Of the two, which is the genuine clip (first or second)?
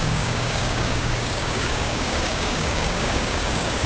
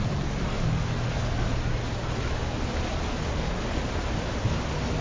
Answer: second